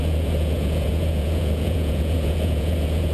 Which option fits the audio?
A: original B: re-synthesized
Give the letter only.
B